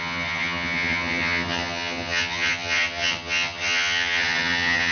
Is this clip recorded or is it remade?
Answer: remade